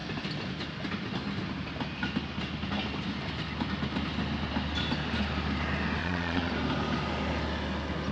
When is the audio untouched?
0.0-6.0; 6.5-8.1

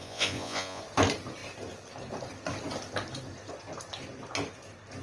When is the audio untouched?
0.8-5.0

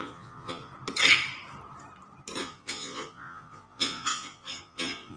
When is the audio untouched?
0.7-2.4

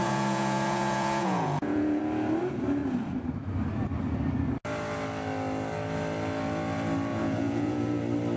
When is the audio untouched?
2.0-7.1; 8.0-8.4

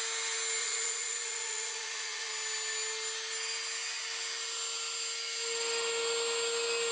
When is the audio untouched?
0.0-0.6; 2.3-6.9

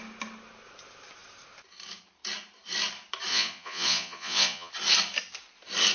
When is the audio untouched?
0.0-3.3; 4.7-5.9

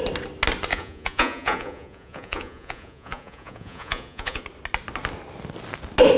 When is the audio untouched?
0.0-0.7; 4.4-6.2

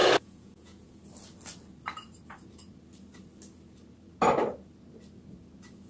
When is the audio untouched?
1.0-5.9